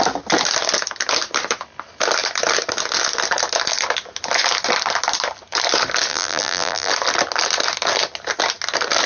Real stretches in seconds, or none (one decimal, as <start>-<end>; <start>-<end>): 0.0-6.1; 6.9-9.1